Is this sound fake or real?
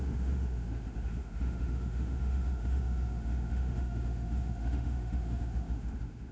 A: fake